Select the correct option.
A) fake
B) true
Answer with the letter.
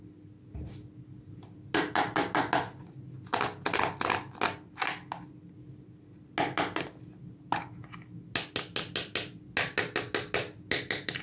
B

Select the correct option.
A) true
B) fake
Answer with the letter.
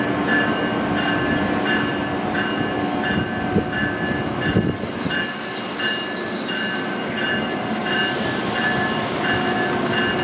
A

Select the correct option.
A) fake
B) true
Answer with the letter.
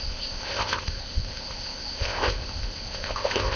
A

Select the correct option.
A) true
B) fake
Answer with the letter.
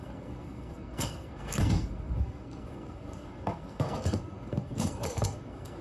B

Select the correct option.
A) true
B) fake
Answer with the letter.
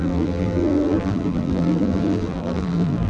B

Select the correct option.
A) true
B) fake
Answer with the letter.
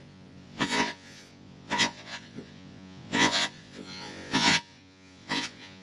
B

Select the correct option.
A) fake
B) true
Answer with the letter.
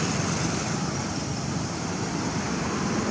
A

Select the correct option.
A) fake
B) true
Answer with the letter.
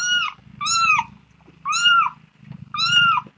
B